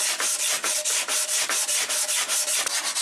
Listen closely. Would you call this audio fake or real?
real